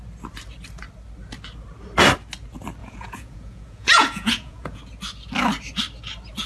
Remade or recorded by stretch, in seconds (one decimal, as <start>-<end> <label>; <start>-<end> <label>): 0.0-2.8 recorded; 2.8-4.8 remade; 4.8-6.5 recorded